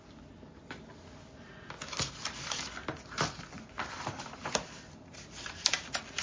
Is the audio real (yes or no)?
yes